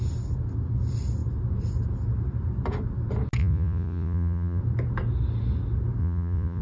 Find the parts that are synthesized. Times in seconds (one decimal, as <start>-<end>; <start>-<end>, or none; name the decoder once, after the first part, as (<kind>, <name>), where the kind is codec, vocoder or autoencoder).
3.4-4.6 (vocoder, Vocos); 6.0-6.6